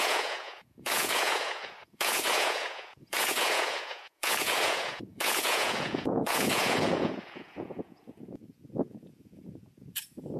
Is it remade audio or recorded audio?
remade